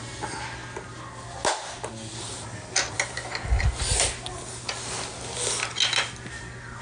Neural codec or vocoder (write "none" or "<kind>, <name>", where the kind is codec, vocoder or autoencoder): none